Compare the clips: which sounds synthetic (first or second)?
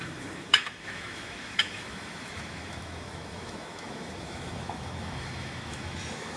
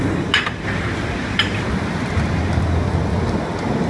first